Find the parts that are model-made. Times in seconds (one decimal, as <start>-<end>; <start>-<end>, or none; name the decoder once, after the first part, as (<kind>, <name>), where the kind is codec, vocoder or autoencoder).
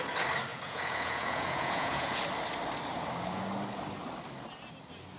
0.5-2.2 (vocoder, Vocos)